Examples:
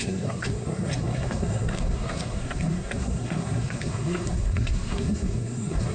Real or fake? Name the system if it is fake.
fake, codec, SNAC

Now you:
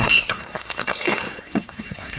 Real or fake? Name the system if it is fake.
fake, codec, SNAC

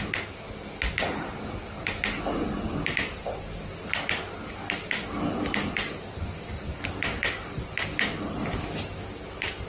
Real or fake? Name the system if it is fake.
real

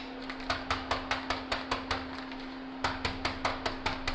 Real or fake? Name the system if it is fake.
real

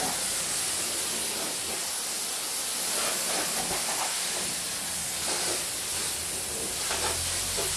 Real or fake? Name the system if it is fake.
real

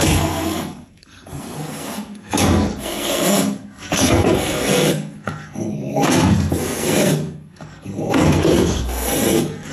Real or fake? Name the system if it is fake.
fake, codec, SNAC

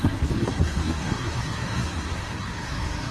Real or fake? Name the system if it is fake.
fake, codec, SNAC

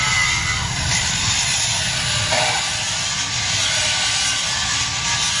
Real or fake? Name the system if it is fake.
real